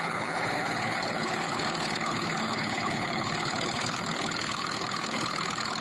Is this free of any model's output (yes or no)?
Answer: no